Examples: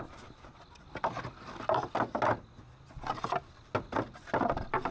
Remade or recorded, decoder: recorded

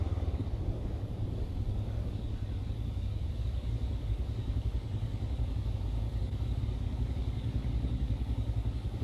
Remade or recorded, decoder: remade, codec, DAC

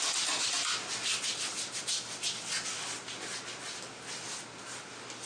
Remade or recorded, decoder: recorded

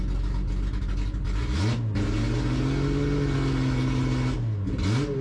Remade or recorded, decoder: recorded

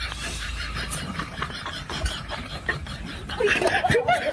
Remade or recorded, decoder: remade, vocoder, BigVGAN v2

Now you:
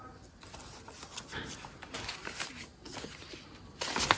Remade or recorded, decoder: recorded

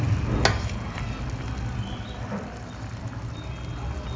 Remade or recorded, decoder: recorded